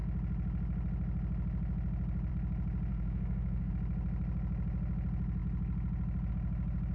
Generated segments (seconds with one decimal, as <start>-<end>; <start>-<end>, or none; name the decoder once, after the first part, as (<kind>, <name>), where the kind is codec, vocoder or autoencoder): 2.9-3.7 (codec, SNAC)